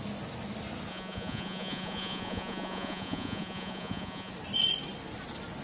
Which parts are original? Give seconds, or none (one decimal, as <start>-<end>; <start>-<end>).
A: 0.0-0.9; 4.3-5.6